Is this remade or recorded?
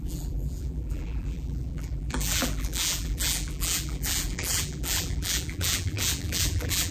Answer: remade